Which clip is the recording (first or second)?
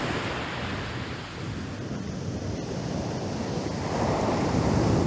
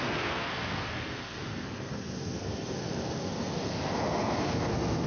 first